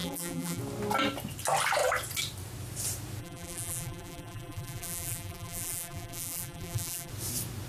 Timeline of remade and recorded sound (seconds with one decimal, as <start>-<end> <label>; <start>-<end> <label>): 0.0-0.6 remade; 0.6-3.2 recorded; 3.2-7.1 remade; 7.1-7.7 recorded